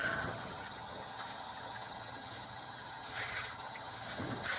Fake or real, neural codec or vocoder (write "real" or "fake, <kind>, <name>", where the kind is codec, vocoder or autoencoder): fake, vocoder, HiFi-GAN